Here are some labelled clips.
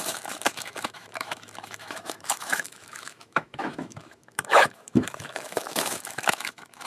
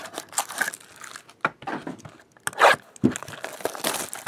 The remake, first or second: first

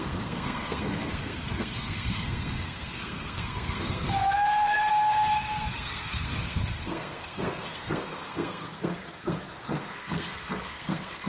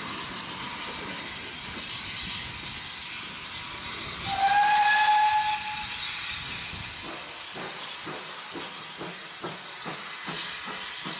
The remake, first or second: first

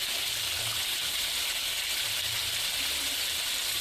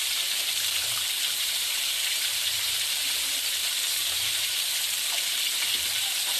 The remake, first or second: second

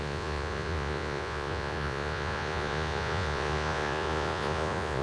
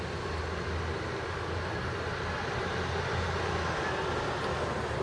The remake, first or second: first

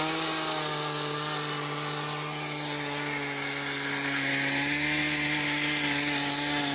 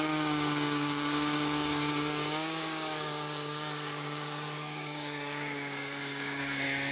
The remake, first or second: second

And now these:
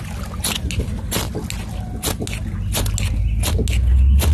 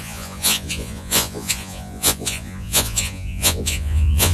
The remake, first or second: second